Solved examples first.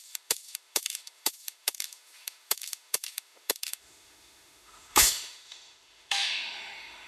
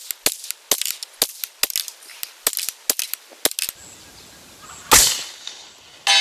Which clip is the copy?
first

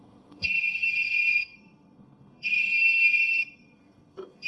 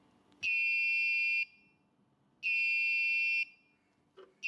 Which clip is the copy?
first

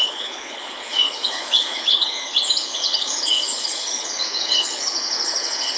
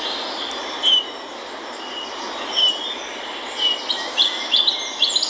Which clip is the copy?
first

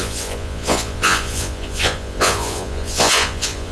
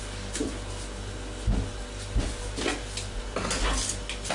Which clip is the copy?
first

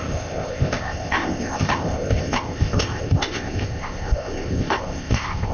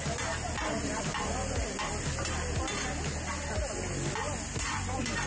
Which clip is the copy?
first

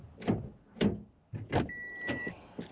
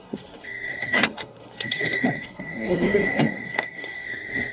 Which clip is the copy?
second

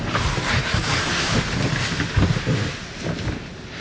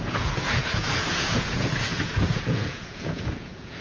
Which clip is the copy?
second